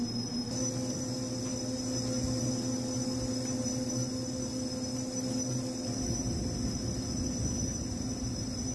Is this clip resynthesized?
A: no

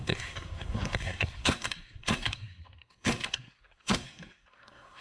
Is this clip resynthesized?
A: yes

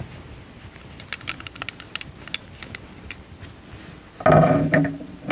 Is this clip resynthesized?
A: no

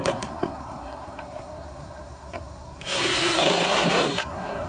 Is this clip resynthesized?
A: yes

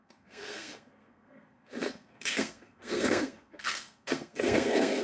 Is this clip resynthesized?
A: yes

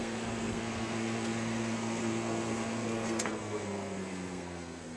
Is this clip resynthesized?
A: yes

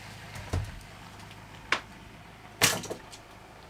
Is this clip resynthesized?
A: no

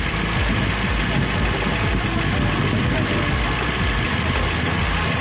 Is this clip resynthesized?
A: no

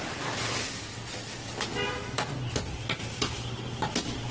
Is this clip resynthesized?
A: no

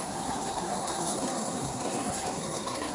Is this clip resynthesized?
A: yes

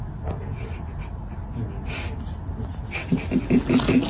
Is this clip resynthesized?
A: no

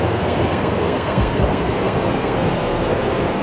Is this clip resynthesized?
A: yes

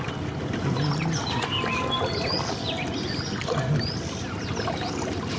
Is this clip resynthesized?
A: no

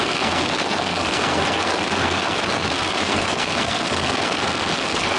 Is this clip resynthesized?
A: yes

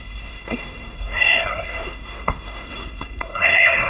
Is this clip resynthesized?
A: yes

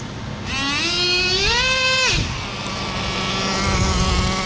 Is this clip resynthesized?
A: no